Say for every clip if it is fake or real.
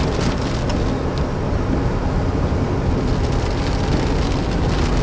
real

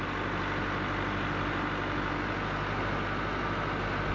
real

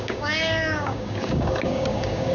fake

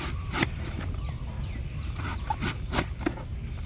real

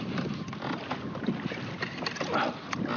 real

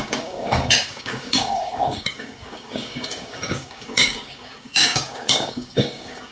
fake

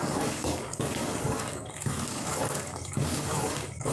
fake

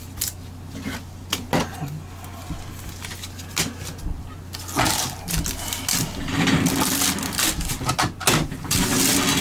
real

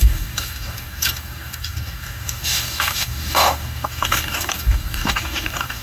fake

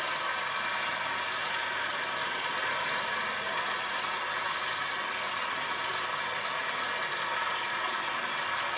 real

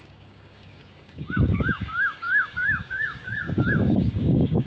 fake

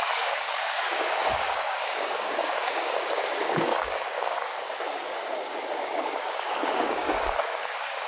fake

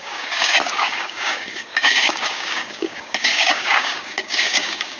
fake